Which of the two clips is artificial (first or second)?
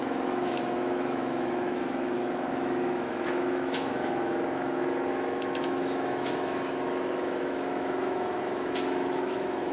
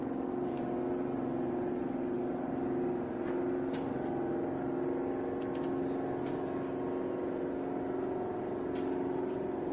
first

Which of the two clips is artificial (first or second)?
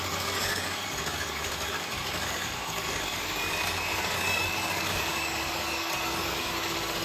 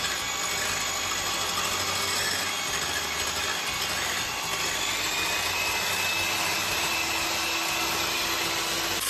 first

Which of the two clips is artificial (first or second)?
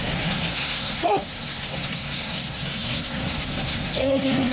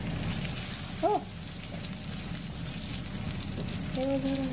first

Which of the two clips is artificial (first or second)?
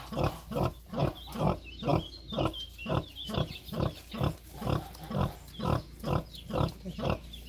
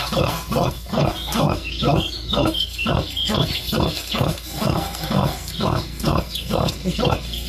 second